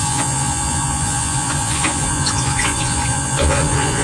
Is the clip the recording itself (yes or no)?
no